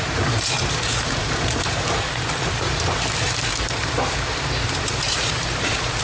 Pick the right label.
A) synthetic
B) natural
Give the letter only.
A